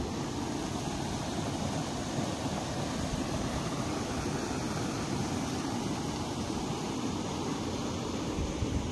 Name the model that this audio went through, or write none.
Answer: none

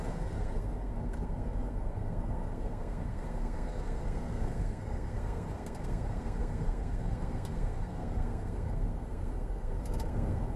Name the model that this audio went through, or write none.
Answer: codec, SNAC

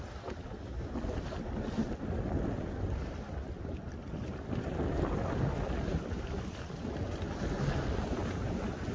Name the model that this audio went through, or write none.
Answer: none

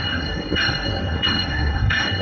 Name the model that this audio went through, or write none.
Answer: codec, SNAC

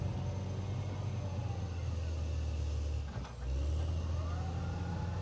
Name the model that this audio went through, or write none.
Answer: none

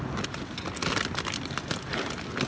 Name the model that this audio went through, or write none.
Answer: none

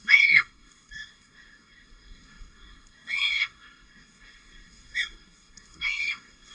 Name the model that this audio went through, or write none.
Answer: codec, SNAC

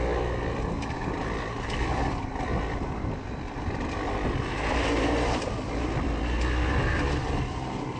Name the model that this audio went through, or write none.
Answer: none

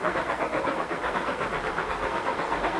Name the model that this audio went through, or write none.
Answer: codec, SNAC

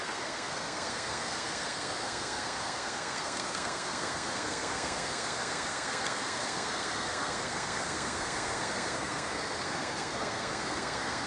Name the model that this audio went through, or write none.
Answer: codec, SNAC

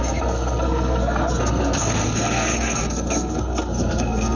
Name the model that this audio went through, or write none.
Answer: codec, SNAC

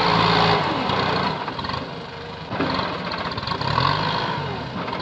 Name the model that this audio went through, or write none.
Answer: none